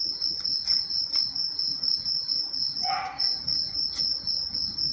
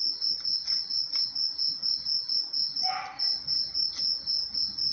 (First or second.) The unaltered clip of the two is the second